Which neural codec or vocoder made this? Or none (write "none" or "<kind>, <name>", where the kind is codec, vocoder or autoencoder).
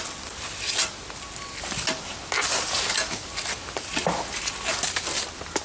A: none